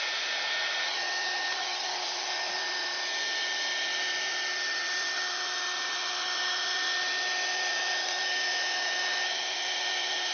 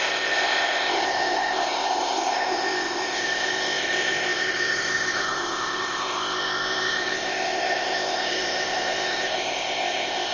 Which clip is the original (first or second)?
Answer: first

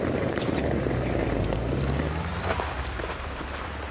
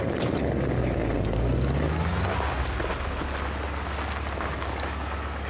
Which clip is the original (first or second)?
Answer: second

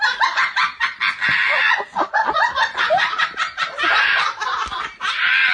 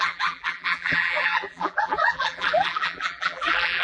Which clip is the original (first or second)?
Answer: first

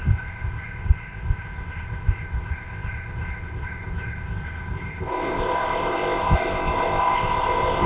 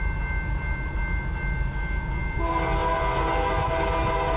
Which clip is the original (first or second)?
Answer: second